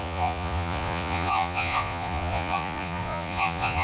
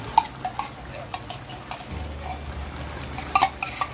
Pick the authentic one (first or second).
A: second